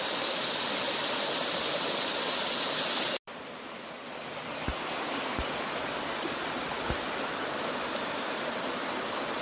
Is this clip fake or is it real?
real